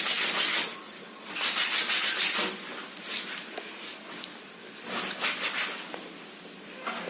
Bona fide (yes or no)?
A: yes